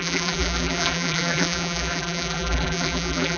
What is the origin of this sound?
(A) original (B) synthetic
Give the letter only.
B